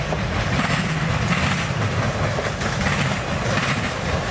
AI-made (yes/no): no